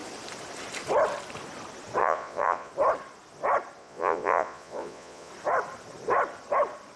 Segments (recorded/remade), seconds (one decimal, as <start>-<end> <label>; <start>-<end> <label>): 0.0-2.0 recorded; 2.0-2.7 remade; 2.7-3.8 recorded; 3.8-5.3 remade; 5.3-7.0 recorded